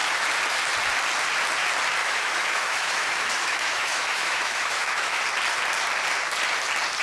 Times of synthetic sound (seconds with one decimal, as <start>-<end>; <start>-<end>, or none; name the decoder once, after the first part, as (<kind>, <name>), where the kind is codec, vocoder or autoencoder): 2.0-5.2 (autoencoder, DAC-VAE)